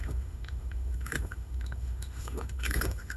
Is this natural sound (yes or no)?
no